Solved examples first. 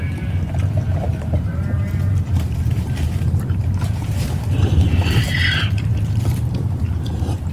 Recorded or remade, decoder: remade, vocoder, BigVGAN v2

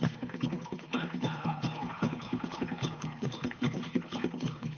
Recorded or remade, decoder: remade, codec, HILCodec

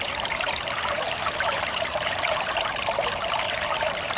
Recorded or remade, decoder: remade, vocoder, BigVGAN v2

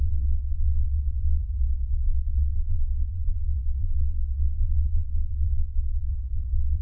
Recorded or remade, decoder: remade, vocoder, WaveNeXt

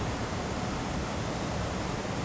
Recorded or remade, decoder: remade, vocoder, BigVGAN v2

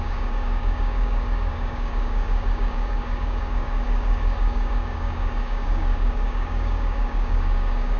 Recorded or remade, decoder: remade, codec, DAC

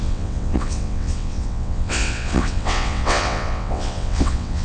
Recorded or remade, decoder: remade, vocoder, WaveNeXt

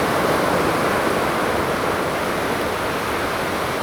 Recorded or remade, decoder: recorded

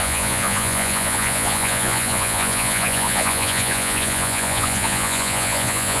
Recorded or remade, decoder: remade, vocoder, Vocos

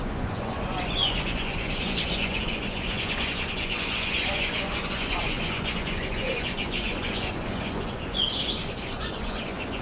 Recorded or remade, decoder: remade, vocoder, Vocos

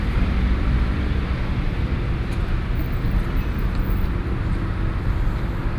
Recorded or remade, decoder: remade, vocoder, BigVGAN v2